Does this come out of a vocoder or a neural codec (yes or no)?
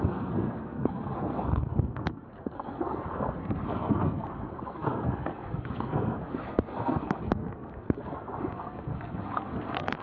yes